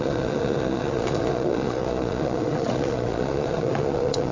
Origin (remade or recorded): remade